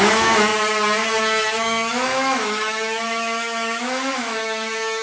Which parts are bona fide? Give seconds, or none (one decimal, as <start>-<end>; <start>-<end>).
0.5-1.2